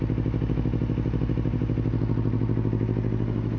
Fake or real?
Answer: real